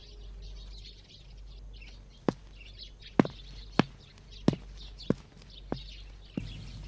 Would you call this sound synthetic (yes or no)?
no